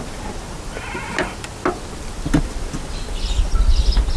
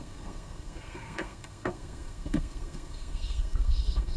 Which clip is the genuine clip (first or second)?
first